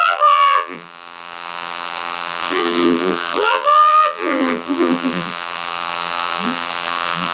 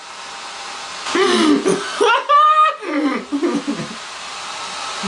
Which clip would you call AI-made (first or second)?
first